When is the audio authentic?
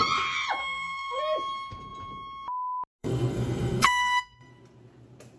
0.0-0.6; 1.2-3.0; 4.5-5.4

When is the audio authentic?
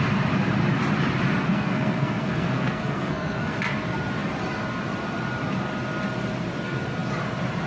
0.0-1.5; 3.6-7.7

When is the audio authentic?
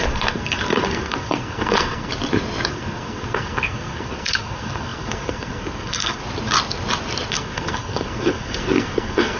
2.1-2.7; 6.2-7.3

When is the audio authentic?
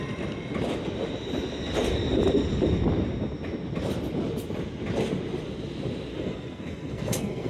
0.0-6.1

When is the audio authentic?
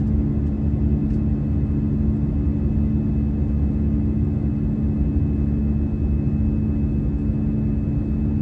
0.0-8.4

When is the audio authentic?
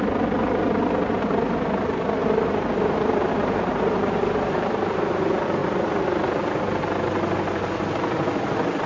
0.0-8.9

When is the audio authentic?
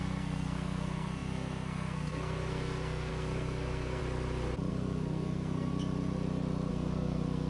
4.0-4.7; 5.7-6.7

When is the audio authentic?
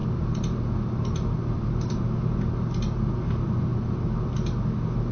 0.0-5.1